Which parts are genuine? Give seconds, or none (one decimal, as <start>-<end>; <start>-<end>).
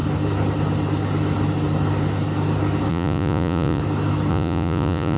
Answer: 0.0-2.9; 3.8-4.3